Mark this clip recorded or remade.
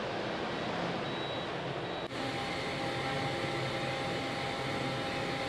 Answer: recorded